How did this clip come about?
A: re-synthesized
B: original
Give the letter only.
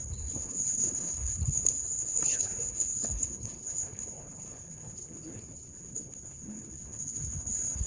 A